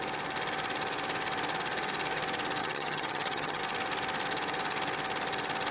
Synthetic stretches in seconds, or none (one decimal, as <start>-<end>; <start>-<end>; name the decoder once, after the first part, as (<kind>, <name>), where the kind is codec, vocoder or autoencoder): 2.6-3.6 (vocoder, HiFi-GAN)